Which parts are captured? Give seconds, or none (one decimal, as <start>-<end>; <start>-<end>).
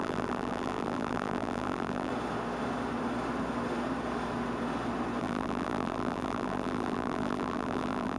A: 2.1-5.2